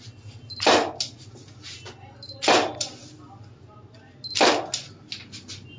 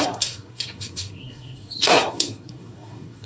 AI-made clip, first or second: second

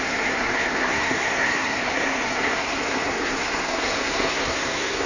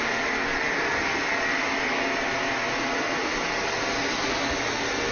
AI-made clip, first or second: first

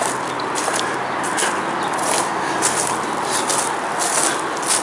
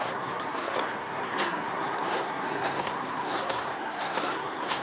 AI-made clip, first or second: second